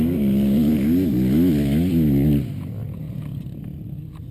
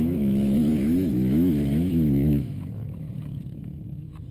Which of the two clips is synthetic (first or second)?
second